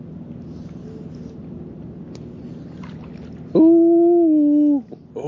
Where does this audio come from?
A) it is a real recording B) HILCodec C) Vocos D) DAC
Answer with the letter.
A